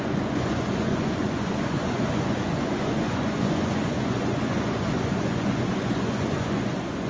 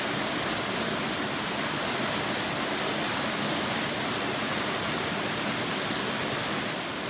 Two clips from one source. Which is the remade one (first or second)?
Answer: first